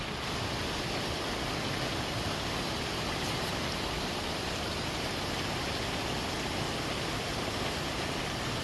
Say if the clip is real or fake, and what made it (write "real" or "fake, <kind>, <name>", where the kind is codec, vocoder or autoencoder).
real